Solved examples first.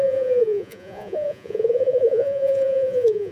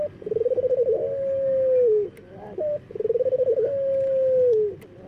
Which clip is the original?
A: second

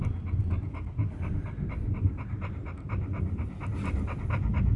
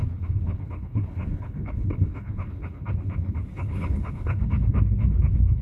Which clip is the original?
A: first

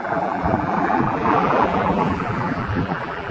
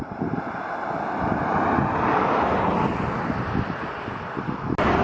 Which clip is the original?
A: second